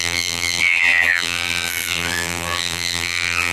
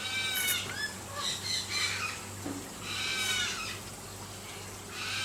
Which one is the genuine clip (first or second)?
second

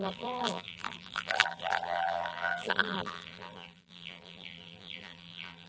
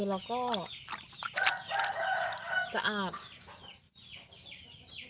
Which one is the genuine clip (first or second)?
second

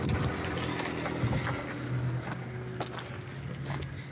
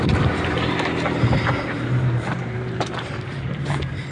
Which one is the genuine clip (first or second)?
first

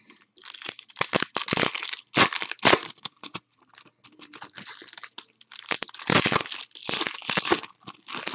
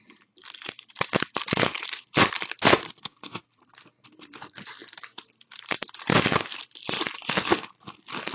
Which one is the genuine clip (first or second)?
first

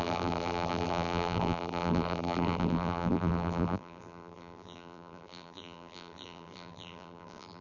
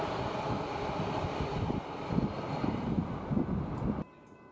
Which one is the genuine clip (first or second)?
second